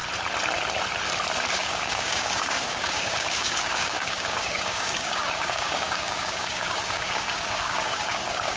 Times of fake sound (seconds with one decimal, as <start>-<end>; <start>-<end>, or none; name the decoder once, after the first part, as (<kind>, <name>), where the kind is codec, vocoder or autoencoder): 1.5-8.6 (codec, DAC)